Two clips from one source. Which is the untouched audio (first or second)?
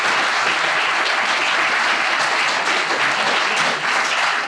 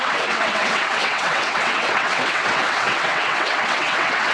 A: first